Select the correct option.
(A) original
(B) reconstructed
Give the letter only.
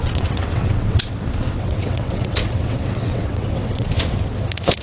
B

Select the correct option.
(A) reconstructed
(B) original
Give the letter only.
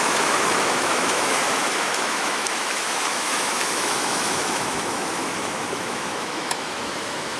A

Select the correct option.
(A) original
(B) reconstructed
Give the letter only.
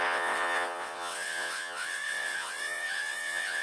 B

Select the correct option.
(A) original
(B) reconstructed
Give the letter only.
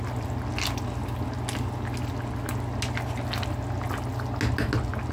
A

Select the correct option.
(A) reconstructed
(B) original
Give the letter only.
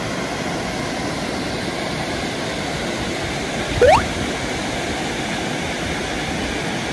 B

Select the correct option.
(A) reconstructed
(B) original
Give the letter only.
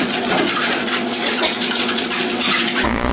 A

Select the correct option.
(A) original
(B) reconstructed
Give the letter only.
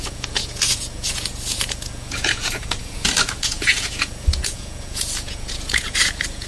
B